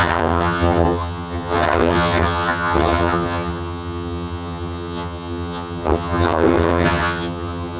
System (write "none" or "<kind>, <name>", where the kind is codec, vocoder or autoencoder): vocoder, HiFi-GAN